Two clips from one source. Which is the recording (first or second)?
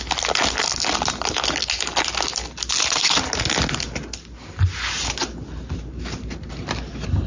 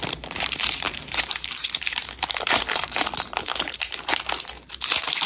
first